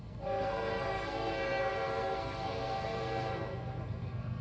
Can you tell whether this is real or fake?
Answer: fake